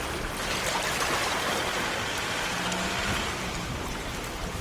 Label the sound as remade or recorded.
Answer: recorded